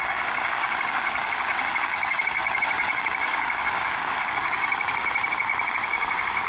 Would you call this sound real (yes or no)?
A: no